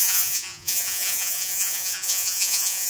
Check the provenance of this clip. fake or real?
fake